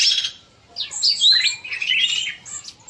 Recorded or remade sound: recorded